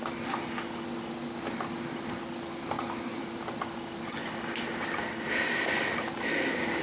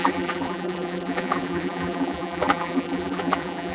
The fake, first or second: second